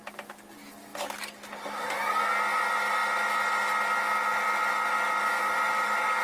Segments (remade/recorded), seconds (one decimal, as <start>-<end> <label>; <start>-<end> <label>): 0.0-6.2 recorded